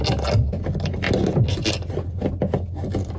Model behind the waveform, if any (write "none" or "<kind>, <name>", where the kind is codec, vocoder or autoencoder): none